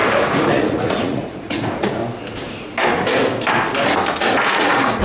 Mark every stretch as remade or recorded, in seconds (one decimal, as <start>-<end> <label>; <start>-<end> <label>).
0.0-2.0 remade; 2.0-4.1 recorded; 4.1-5.0 remade